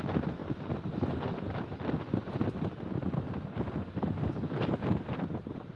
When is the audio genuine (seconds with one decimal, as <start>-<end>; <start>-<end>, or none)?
0.0-5.8